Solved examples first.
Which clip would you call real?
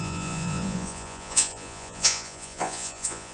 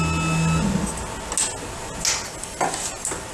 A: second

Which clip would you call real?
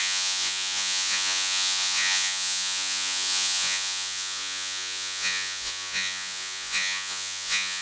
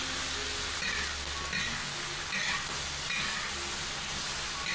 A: second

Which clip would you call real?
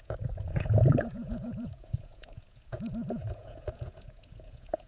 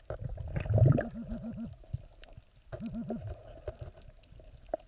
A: second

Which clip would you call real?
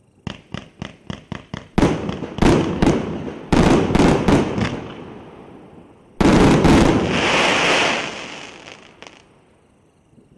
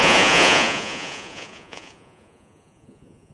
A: first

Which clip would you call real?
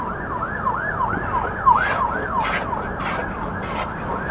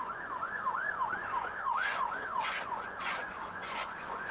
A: first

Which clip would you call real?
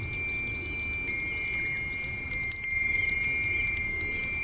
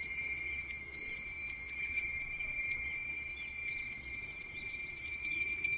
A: first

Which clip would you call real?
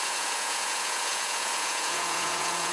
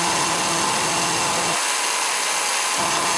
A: second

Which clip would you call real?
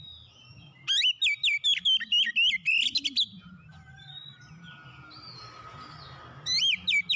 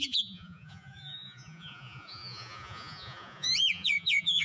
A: first